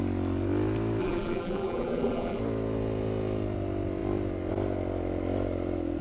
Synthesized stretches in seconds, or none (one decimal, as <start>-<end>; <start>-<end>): 1.0-2.4